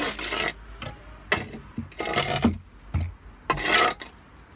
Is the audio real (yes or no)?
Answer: yes